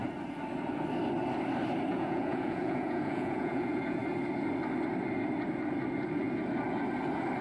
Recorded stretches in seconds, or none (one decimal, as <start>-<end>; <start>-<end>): 0.0-1.9; 4.0-7.4

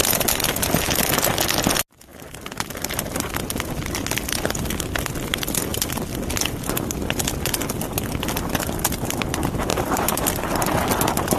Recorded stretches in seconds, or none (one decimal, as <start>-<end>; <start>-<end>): 0.0-2.1; 3.3-9.7; 10.2-11.4

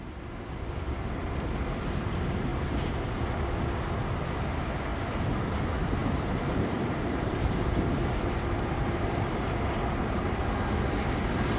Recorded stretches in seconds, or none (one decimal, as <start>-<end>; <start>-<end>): 0.0-6.0; 7.7-8.7; 10.4-11.6

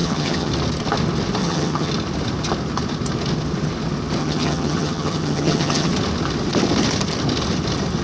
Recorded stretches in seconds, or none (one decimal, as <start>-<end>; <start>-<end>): 0.5-1.4; 1.9-4.2; 5.9-8.0

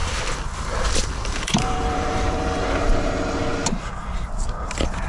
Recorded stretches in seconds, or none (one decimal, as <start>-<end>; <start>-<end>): 3.1-5.1

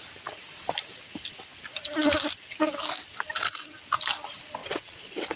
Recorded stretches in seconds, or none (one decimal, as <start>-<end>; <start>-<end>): 0.0-4.6